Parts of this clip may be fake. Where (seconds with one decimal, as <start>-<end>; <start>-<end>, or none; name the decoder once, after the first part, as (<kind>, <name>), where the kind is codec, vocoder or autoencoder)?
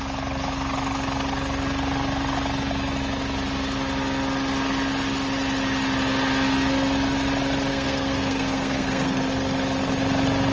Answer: 7.7-9.2 (codec, SNAC)